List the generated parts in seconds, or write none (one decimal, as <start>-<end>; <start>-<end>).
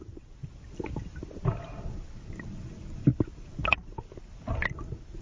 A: none